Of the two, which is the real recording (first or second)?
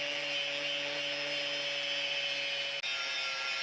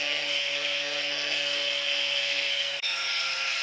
first